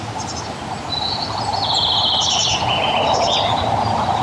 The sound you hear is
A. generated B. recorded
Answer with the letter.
B